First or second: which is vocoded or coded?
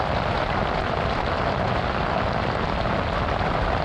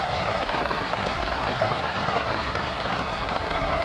second